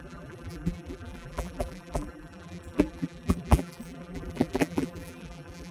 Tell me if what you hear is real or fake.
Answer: fake